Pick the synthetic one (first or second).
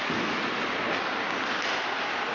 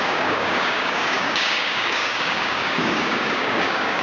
second